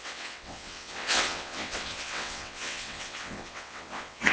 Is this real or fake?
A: fake